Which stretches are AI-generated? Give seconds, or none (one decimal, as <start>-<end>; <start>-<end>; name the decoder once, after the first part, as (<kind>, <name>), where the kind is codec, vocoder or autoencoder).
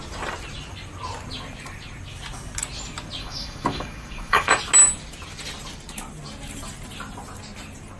3.2-4.5 (codec, DAC)